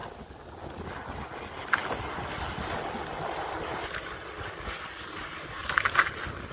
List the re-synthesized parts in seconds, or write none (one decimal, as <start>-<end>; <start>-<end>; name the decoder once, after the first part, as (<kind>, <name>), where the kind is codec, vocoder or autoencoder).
none